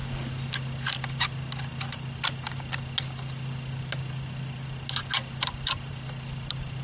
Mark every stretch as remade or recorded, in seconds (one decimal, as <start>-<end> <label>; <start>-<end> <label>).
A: 0.0-6.8 recorded